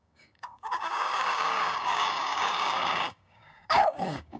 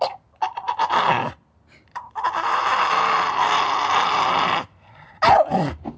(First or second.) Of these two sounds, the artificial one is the first